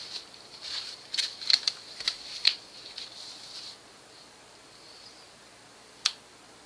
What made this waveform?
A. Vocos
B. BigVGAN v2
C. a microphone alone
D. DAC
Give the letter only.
C